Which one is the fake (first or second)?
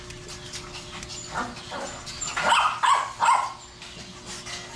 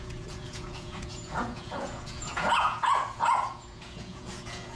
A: second